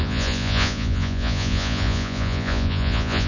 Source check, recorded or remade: remade